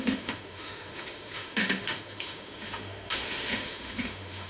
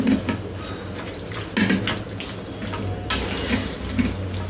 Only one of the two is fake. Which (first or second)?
first